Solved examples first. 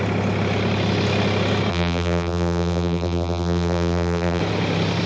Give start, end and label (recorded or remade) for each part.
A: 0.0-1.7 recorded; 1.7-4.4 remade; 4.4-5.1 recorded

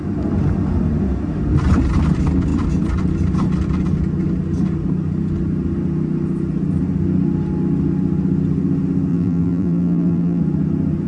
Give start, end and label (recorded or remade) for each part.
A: 0.0-9.1 recorded; 9.1-10.4 remade; 10.4-11.1 recorded

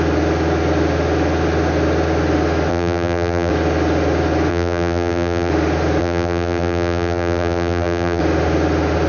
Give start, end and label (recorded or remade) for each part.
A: 0.0-2.7 recorded; 2.7-3.5 remade; 3.5-4.5 recorded; 4.5-5.5 remade; 5.5-6.0 recorded; 6.0-8.2 remade; 8.2-9.1 recorded

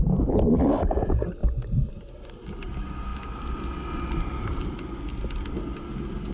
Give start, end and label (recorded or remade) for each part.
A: 0.0-6.3 recorded